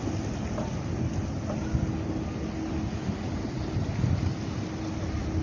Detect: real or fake real